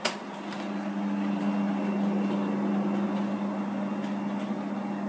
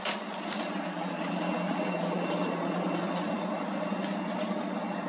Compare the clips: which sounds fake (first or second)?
second